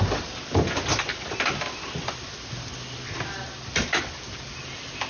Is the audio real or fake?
real